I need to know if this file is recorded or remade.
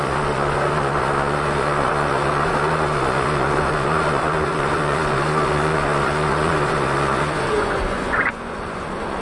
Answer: remade